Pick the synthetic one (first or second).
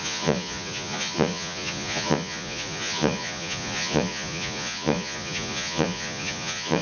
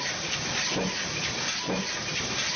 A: first